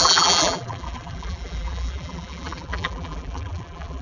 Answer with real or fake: fake